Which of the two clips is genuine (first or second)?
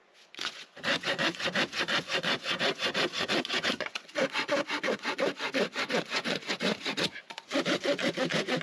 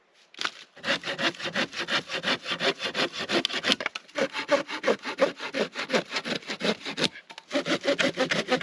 second